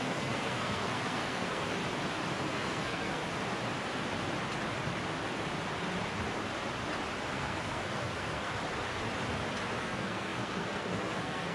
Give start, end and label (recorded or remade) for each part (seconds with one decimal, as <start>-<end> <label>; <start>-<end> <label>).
0.0-1.8 remade; 1.8-2.4 recorded; 2.4-3.2 remade; 3.2-7.3 recorded; 7.3-8.6 remade; 8.6-9.8 recorded; 9.8-11.5 remade